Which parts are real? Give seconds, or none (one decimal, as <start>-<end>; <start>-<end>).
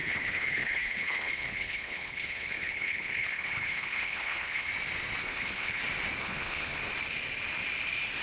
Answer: 4.7-5.2; 5.8-6.2; 6.8-8.2